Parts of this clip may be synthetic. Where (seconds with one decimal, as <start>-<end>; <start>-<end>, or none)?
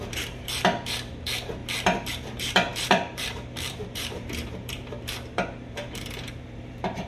0.0-1.6; 2.1-7.1